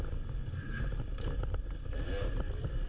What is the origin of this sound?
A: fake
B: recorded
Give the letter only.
B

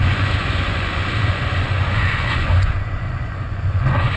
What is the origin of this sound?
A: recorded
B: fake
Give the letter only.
B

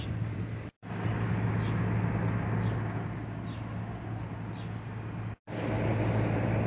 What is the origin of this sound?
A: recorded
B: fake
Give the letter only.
A